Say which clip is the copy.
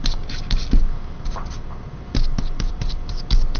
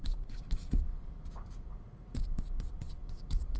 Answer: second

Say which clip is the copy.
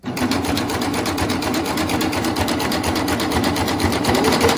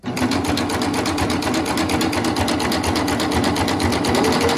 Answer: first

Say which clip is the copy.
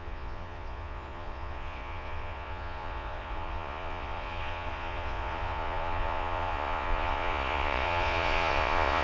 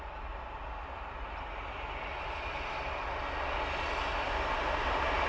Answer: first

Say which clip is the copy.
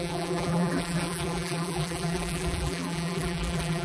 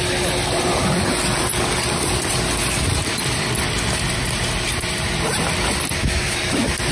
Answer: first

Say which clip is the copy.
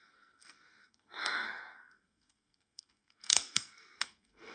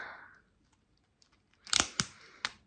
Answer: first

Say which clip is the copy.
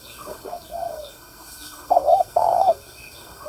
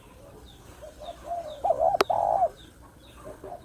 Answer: first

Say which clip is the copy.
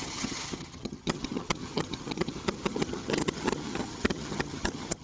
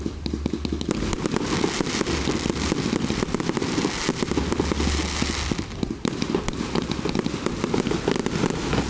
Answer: first